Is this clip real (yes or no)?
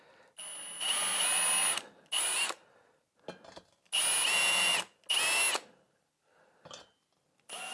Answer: yes